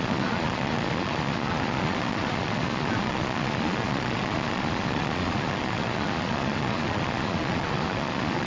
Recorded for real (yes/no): no